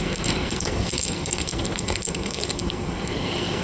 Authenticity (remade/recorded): remade